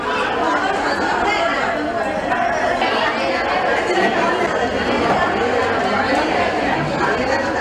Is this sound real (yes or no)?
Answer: yes